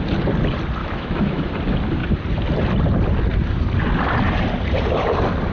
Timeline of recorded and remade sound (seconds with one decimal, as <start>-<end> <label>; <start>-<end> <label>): 0.0-0.8 recorded; 0.8-1.5 remade; 1.5-5.5 recorded